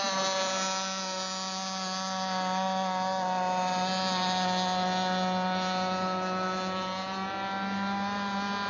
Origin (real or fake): real